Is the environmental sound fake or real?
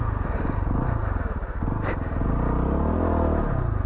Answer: real